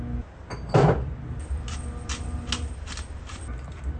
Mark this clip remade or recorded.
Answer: recorded